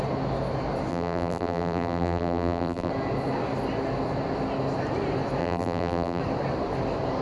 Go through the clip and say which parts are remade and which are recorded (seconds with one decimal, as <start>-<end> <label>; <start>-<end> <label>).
0.0-0.9 recorded; 0.9-2.9 remade; 2.9-5.4 recorded; 5.4-6.2 remade; 6.2-7.2 recorded